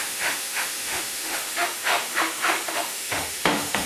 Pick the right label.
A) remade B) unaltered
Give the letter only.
A